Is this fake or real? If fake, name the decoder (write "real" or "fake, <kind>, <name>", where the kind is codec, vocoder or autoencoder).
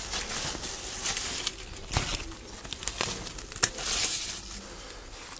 real